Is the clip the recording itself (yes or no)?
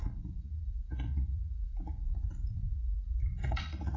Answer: no